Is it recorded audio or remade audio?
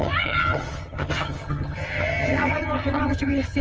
remade